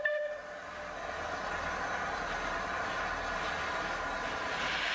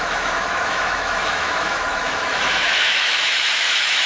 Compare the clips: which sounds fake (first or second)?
second